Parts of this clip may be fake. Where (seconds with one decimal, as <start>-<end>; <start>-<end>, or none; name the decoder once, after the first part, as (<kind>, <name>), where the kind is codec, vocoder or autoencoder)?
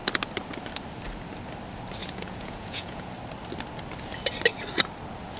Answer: 2.0-3.1 (vocoder, Vocos)